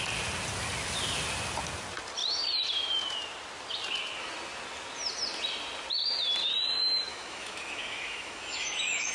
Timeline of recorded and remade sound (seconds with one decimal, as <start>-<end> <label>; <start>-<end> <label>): 0.0-7.1 recorded; 7.1-9.1 remade